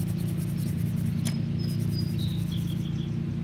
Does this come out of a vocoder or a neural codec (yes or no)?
no